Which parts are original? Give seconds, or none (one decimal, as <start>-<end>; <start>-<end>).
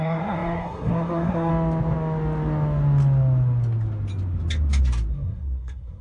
1.5-5.1